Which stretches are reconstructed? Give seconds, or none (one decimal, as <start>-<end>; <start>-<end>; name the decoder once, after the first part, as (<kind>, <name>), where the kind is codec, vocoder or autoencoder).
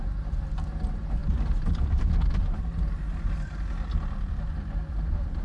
none